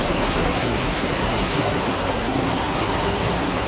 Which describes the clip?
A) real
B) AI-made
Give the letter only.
B